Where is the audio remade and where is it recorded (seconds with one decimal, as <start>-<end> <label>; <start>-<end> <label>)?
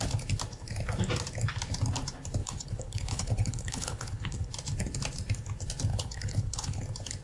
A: 0.0-2.4 recorded; 2.4-4.5 remade; 4.5-5.9 recorded; 5.9-6.8 remade; 6.8-7.2 recorded